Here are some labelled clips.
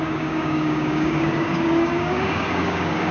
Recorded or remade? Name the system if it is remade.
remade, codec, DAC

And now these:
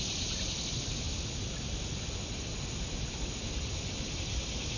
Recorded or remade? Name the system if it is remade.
recorded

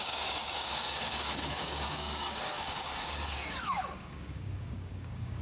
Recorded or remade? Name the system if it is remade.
remade, codec, DAC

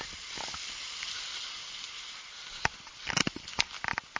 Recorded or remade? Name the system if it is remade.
recorded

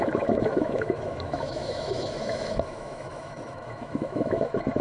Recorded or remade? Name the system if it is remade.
remade, autoencoder, DAC-VAE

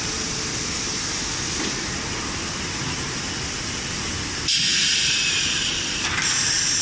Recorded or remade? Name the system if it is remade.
recorded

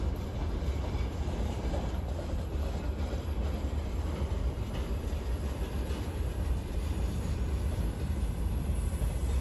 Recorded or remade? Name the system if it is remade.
remade, vocoder, BigVGAN v2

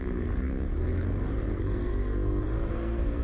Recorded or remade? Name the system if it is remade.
remade, codec, SNAC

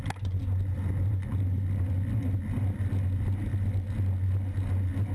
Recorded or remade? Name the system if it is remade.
recorded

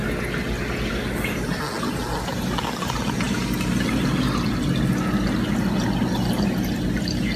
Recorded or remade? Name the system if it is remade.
recorded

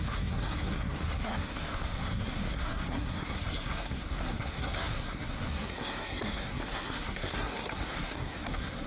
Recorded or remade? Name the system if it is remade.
remade, codec, SNAC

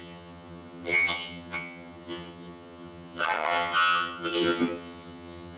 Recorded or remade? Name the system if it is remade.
remade, vocoder, HiFi-GAN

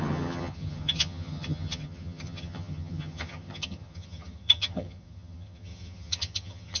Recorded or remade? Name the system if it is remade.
remade, vocoder, HiFi-GAN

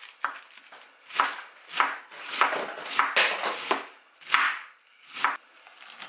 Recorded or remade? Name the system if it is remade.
recorded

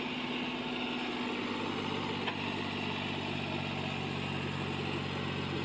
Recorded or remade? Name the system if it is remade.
recorded